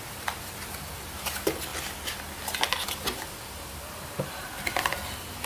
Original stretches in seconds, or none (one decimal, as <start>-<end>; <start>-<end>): 0.0-5.5